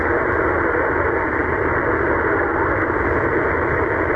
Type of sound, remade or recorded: recorded